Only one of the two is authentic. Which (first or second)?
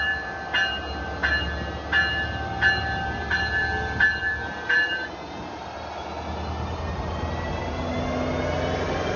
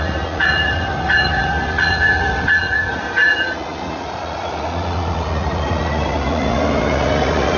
first